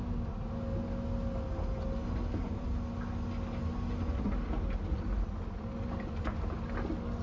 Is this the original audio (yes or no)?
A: yes